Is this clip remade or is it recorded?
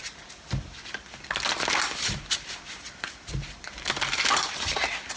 recorded